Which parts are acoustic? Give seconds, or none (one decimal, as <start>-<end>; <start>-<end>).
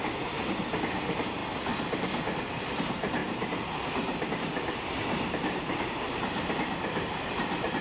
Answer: 1.4-2.4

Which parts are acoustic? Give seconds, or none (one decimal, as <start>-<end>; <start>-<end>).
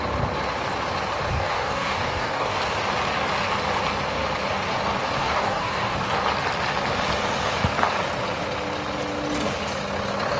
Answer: 0.0-1.3; 2.6-5.2; 6.1-10.4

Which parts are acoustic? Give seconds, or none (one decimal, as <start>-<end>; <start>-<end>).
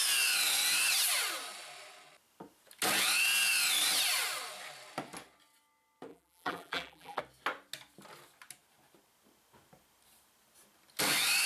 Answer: 0.0-6.1; 7.2-11.5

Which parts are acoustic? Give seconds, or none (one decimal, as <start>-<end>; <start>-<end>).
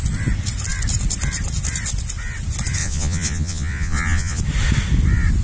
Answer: 0.0-2.8; 4.4-5.4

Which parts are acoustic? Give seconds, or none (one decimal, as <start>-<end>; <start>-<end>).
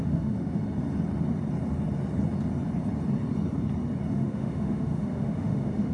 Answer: 0.6-4.1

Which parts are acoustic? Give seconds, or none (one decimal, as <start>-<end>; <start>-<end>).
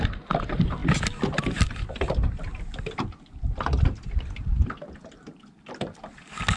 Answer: 2.5-5.1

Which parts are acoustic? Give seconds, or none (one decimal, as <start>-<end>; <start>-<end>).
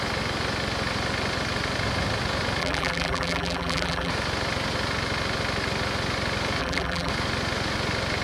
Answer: 0.0-2.6; 4.1-6.6; 7.1-8.2